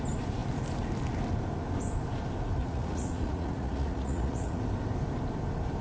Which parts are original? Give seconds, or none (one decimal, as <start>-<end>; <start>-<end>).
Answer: 0.0-2.6; 4.6-5.8